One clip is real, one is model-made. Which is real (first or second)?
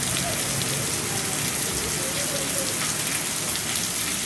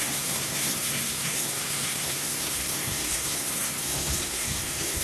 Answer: first